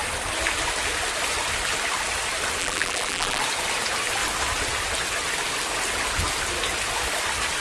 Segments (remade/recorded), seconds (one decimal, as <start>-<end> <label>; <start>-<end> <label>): 0.0-2.6 recorded; 2.6-3.4 remade; 3.4-7.6 recorded